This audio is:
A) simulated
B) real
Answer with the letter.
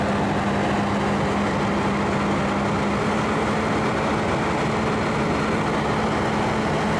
B